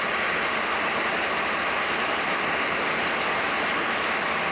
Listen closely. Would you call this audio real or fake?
real